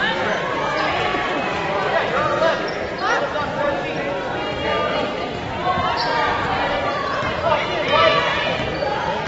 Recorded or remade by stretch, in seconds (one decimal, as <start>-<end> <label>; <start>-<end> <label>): 0.0-1.1 recorded; 1.1-3.0 remade; 3.0-9.3 recorded